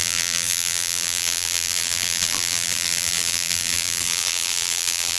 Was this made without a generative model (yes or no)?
no